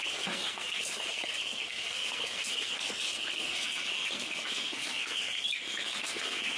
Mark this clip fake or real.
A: fake